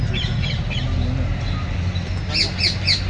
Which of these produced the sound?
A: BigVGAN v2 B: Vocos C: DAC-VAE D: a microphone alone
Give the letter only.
D